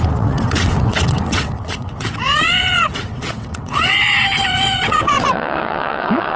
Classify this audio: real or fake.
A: fake